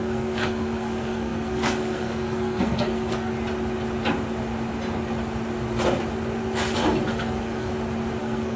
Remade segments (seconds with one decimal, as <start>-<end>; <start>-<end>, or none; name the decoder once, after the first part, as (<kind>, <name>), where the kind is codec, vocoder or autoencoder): 0.0-3.3 (codec, SNAC); 7.1-7.7; 8.2-8.6